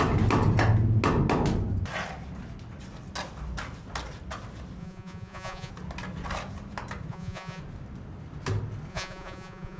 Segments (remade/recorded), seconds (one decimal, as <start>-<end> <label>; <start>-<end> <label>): 0.0-4.8 recorded; 4.8-5.7 remade; 5.7-7.1 recorded; 7.1-7.6 remade; 7.6-8.9 recorded; 8.9-9.8 remade